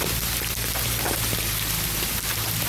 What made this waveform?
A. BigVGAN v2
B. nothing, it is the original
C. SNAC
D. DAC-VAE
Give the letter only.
A